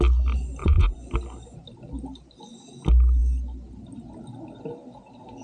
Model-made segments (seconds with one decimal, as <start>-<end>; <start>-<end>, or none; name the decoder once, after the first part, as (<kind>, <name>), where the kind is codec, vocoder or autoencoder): 0.6-1.1 (vocoder, Vocos)